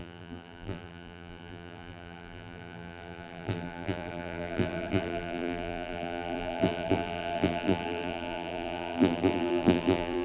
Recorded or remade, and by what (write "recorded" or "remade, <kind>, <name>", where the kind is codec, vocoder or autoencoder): remade, vocoder, BigVGAN v2